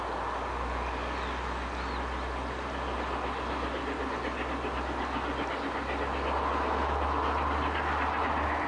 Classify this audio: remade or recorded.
recorded